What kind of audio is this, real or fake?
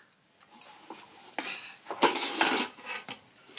real